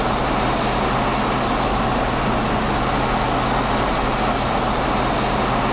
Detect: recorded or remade recorded